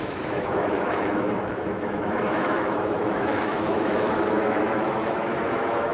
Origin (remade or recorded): remade